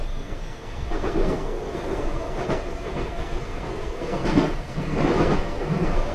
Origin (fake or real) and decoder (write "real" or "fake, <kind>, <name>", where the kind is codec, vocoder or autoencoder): fake, codec, SNAC